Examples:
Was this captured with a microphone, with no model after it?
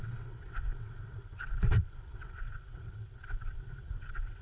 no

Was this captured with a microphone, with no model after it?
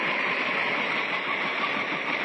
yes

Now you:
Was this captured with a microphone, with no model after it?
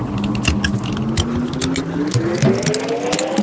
yes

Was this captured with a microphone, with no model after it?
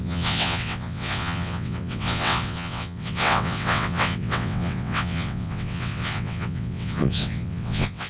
no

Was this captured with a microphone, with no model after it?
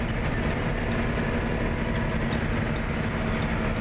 yes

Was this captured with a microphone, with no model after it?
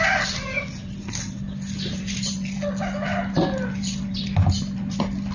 yes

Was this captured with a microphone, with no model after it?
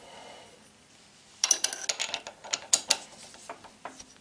yes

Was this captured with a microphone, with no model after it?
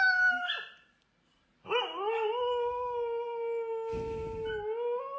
yes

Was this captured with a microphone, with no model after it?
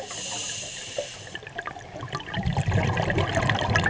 yes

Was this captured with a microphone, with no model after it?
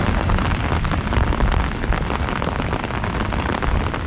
yes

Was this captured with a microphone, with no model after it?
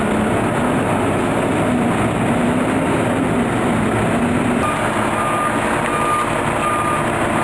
yes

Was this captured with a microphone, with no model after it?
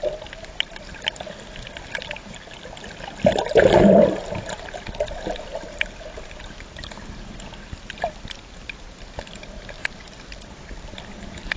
yes